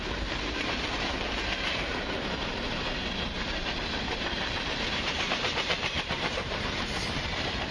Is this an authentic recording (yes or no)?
no